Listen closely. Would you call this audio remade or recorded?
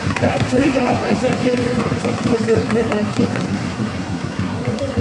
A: remade